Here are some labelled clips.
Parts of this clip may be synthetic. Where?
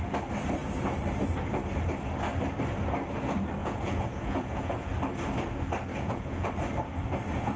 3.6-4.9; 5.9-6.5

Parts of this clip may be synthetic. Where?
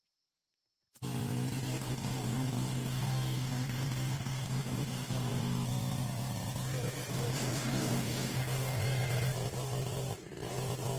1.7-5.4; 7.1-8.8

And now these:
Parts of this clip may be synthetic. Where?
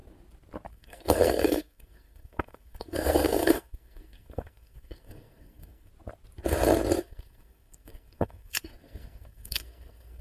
0.7-5.9; 7.0-10.2